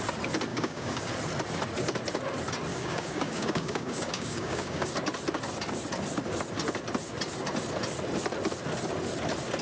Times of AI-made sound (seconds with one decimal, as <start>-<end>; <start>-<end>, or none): 0.5-1.1; 2.7-4.9